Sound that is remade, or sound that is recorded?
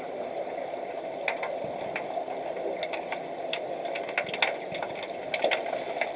recorded